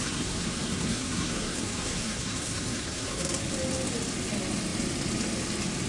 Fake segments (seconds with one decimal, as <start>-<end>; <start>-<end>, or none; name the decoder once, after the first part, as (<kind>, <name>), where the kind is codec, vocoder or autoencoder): 0.0-3.4 (codec, SNAC)